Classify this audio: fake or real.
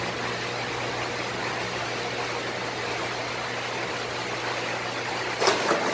real